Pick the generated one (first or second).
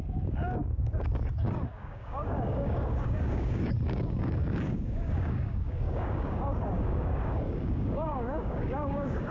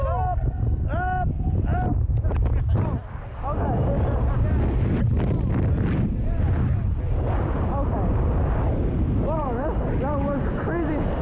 first